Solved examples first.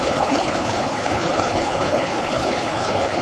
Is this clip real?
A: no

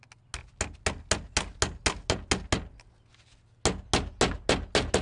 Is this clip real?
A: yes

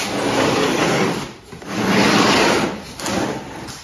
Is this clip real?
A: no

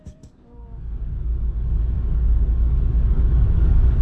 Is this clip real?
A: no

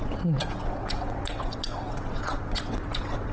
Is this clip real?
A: no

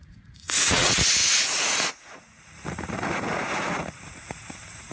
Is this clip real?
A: no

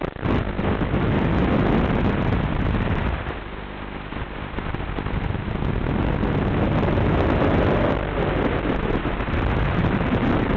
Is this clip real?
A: yes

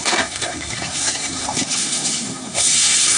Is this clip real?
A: no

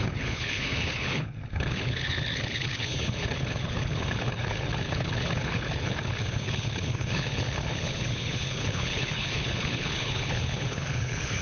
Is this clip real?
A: no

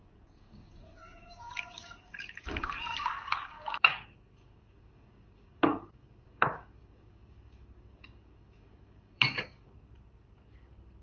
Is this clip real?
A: no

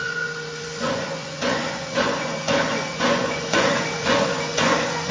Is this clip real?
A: no